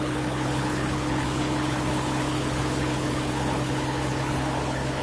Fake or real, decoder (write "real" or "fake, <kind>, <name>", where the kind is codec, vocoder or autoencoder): fake, codec, HILCodec